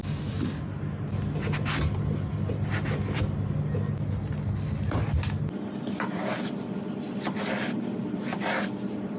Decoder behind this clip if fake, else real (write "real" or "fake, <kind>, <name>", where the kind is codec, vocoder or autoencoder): real